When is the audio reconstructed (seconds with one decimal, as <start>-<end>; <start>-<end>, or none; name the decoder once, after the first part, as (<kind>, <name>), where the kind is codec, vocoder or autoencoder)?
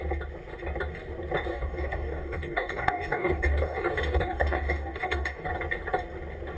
1.5-5.5 (codec, DAC)